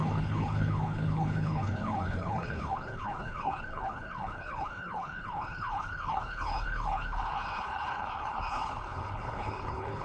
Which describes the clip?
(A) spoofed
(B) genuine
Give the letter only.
A